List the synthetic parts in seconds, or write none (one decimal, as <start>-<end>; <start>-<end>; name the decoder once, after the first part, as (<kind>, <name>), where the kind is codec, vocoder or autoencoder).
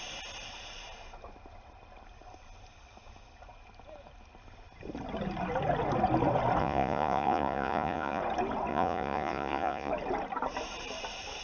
6.6-8.2 (vocoder, Vocos); 8.7-9.9